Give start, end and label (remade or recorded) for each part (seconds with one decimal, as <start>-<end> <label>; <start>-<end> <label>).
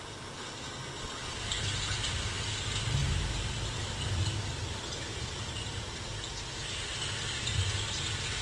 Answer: 0.0-1.2 recorded; 1.2-2.2 remade; 2.2-3.0 recorded; 3.0-4.5 remade; 4.5-5.1 recorded; 5.1-6.1 remade; 6.1-8.4 recorded